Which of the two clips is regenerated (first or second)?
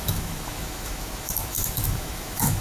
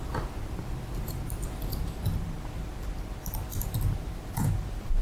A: first